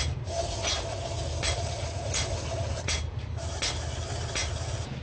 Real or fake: real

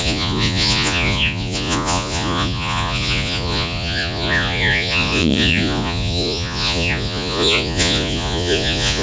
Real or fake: fake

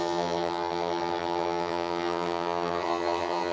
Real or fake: fake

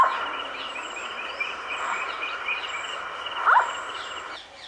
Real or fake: fake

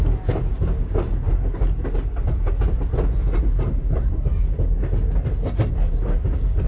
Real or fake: real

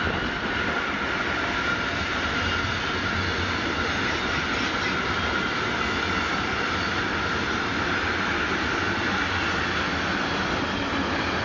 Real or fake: real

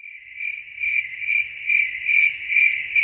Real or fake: real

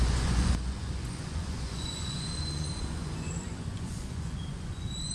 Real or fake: fake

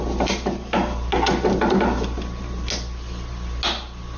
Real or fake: real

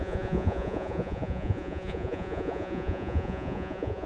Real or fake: fake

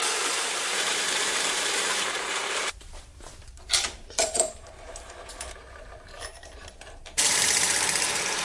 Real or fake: fake